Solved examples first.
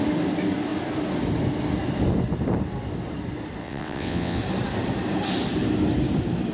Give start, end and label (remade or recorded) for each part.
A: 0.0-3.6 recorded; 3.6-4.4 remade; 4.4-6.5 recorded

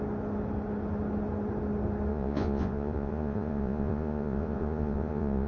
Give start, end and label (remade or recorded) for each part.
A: 0.0-2.1 recorded; 2.1-5.5 remade

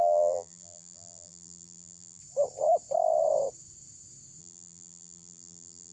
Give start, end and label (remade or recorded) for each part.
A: 0.0-2.2 remade; 2.2-4.4 recorded; 4.4-5.9 remade